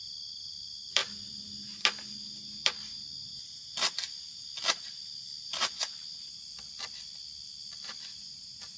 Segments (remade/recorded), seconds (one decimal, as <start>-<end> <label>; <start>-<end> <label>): 0.0-8.8 recorded

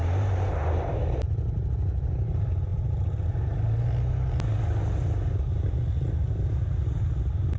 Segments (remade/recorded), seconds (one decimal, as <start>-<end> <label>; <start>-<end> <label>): 0.0-7.6 recorded

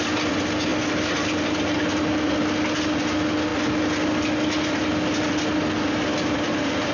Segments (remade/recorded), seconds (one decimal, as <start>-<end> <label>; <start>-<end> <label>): 0.0-6.9 recorded

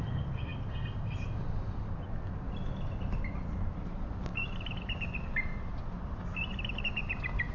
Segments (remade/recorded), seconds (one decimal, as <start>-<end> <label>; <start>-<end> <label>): 0.0-7.5 recorded

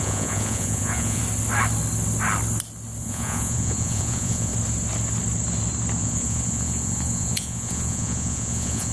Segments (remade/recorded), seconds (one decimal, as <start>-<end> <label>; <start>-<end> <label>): 0.0-1.2 remade; 1.2-3.0 recorded; 3.0-4.5 remade; 4.5-6.0 recorded; 6.0-8.9 remade

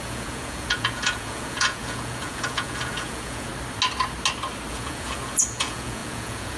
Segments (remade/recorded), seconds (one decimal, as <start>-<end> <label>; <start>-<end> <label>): 0.0-3.5 remade; 3.5-4.7 recorded; 4.7-6.6 remade